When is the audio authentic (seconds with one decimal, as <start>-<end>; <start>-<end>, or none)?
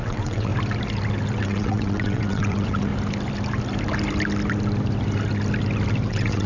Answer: 0.5-1.4; 2.9-6.1